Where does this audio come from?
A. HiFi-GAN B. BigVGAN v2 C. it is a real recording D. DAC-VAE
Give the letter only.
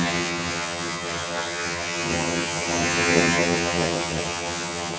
A